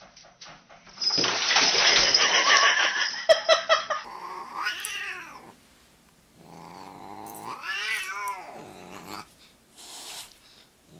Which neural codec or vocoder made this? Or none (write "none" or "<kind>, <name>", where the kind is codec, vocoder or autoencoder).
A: vocoder, BigVGAN v2